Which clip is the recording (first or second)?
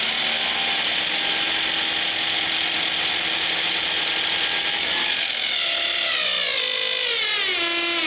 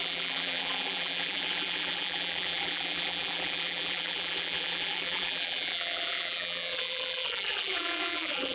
first